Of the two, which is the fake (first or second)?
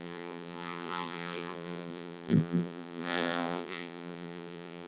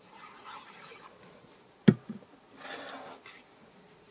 first